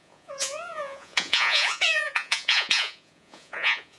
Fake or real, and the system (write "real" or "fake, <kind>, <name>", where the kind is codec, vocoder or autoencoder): fake, vocoder, Vocos